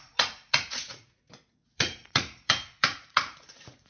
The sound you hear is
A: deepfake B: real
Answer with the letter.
A